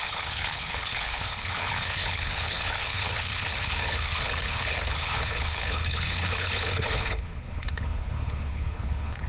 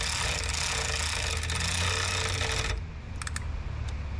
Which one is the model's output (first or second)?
first